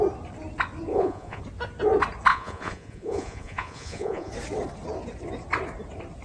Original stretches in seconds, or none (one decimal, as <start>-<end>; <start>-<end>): 0.0-0.9; 1.4-2.3; 4.3-6.2